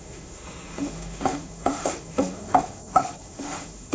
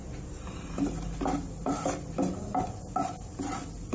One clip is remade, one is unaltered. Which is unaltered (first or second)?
second